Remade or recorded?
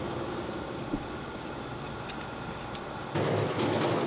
recorded